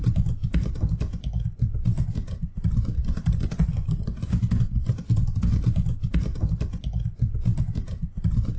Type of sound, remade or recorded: recorded